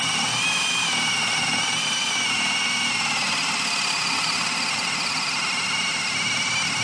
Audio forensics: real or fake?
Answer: real